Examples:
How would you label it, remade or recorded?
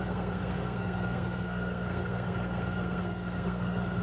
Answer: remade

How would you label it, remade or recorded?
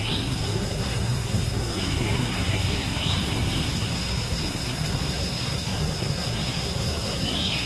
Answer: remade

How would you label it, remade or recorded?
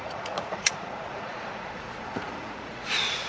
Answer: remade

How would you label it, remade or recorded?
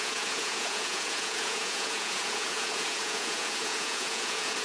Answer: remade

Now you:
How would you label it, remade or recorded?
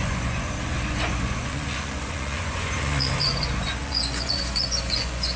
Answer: remade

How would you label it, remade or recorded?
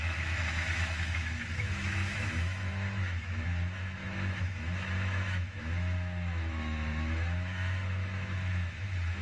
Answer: remade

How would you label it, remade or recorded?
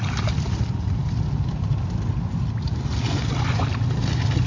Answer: recorded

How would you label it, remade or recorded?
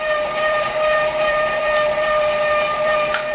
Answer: remade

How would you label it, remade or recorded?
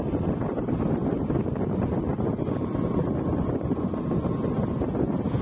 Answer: recorded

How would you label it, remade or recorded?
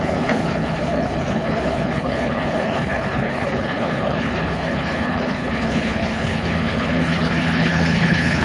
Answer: remade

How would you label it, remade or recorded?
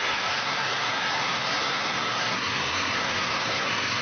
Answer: remade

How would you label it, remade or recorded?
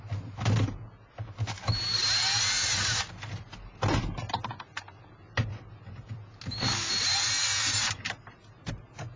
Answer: recorded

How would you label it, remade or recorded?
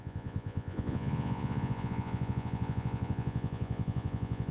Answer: remade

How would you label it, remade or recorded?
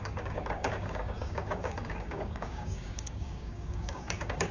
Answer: remade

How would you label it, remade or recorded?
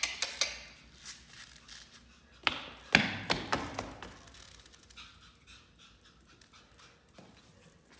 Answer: recorded